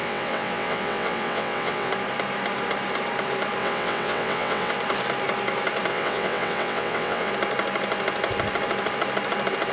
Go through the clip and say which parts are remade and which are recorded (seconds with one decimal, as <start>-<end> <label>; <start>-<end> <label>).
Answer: 0.0-1.9 remade; 1.9-3.6 recorded; 3.6-4.7 remade; 4.7-5.9 recorded; 5.9-7.3 remade; 7.3-9.7 recorded